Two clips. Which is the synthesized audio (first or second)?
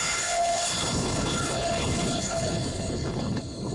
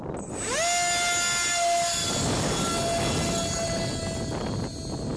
first